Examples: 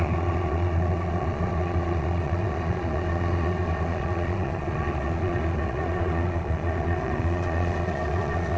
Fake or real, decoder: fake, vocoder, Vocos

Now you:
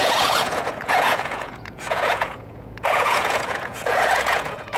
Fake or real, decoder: fake, vocoder, Vocos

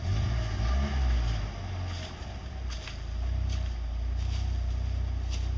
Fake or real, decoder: real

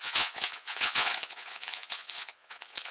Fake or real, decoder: fake, vocoder, Vocos